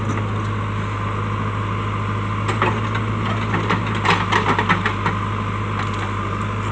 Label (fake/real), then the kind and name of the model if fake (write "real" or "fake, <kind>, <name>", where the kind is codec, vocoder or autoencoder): real